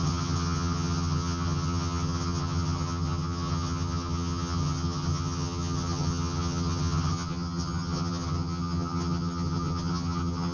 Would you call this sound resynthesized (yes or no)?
yes